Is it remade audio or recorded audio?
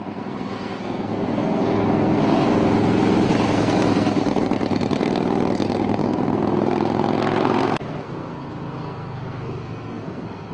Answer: remade